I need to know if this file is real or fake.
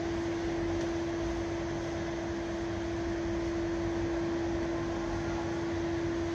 real